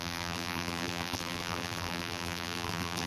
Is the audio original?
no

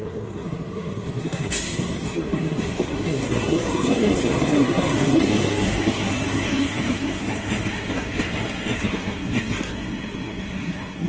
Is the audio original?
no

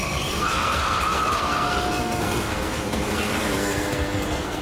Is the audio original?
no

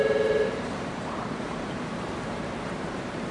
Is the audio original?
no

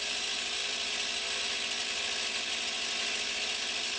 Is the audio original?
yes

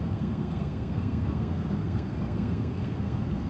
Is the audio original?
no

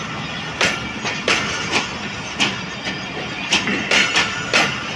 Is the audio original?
yes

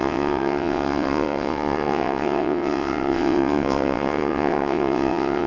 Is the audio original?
no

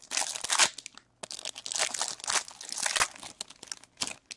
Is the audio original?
yes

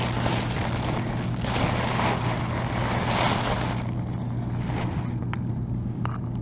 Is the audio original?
yes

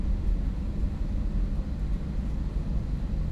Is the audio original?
yes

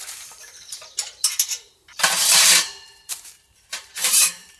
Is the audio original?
no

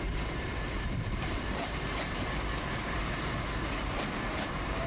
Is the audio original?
no